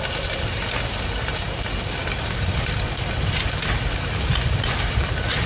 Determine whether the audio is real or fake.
real